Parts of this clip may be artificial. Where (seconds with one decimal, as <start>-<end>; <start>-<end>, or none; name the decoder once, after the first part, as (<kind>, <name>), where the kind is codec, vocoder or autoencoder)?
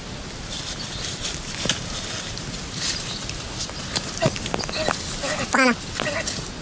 none